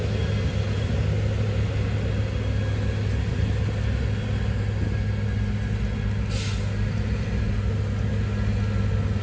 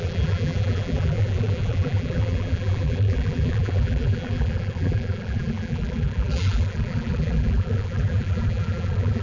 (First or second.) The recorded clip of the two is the first